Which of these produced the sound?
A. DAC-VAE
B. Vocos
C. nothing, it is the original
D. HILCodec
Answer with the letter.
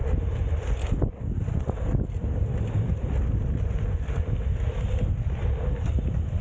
C